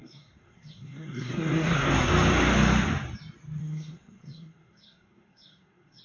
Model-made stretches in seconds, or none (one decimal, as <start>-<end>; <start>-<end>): 0.0-2.1; 3.6-6.0